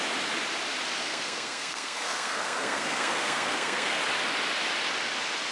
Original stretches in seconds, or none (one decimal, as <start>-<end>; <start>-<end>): 0.0-1.0; 4.0-5.5